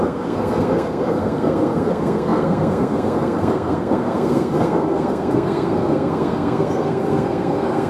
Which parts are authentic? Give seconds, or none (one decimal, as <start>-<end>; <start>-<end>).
none